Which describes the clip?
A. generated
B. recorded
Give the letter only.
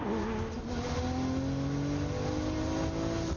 B